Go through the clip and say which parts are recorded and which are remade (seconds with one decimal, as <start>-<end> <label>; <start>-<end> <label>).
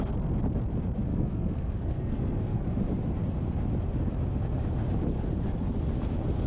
0.0-1.1 recorded; 1.1-2.7 remade; 2.7-6.5 recorded